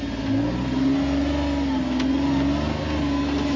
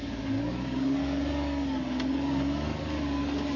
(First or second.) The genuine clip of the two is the first